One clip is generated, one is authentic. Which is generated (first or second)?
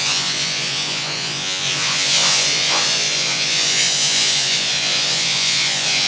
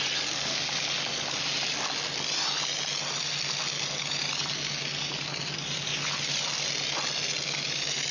first